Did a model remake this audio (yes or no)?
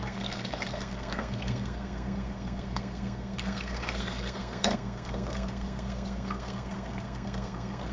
yes